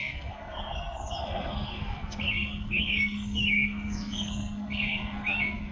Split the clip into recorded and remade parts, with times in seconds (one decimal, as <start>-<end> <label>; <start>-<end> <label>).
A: 0.0-5.7 remade